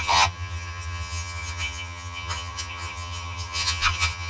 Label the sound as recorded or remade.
remade